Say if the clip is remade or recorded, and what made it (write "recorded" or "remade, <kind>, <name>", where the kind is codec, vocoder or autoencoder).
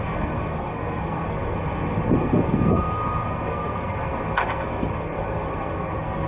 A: remade, codec, SNAC